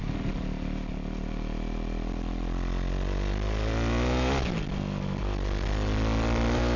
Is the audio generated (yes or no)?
no